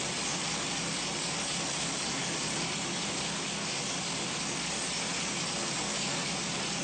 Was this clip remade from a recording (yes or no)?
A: no